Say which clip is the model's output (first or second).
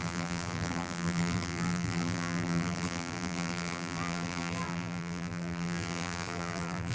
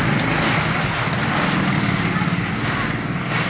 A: first